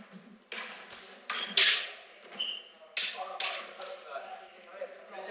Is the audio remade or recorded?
recorded